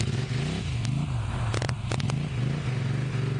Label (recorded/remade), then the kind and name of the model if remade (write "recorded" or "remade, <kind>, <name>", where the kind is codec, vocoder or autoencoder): recorded